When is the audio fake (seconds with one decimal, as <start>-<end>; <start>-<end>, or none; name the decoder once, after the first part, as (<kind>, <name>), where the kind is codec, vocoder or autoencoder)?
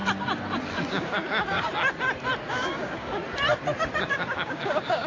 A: 0.9-1.7 (codec, DAC); 2.5-3.2; 4.0-5.1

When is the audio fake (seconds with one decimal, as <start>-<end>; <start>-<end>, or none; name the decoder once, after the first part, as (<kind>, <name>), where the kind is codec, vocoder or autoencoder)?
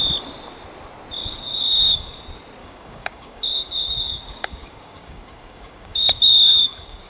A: 1.2-2.2 (codec, DAC); 2.6-7.1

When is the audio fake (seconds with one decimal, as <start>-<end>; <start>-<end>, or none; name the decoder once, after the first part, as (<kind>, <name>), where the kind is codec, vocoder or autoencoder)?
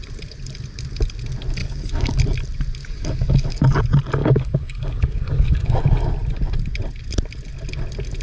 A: 1.6-2.2 (codec, DAC); 2.8-3.8; 4.2-5.8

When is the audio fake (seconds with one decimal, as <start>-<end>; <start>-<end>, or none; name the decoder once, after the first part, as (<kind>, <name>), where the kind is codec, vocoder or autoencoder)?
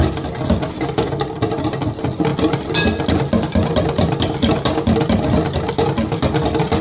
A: none